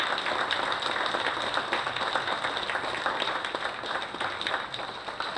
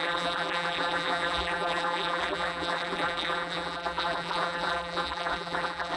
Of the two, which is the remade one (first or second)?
second